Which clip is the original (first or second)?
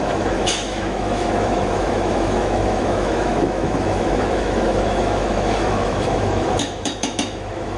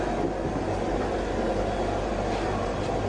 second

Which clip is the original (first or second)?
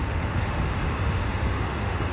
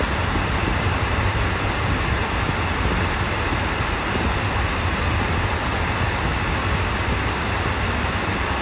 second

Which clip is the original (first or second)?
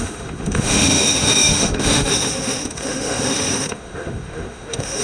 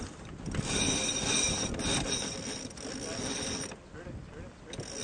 second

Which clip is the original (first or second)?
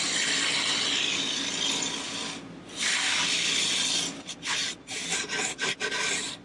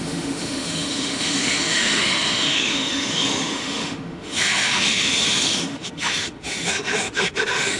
first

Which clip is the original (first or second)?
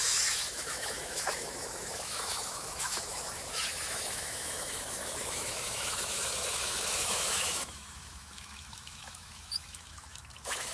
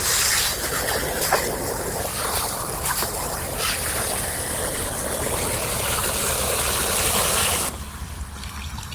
second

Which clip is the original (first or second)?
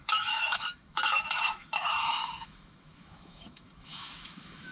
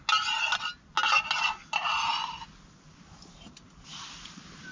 second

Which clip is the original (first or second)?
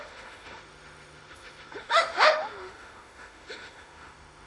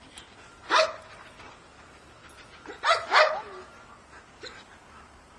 second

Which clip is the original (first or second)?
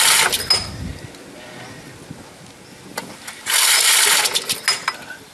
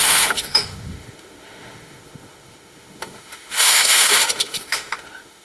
first